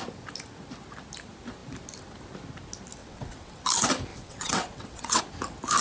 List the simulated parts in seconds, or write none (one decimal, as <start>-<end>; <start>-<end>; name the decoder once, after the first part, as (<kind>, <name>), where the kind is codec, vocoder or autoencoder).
3.0-3.6 (vocoder, WaveNeXt); 4.1-5.2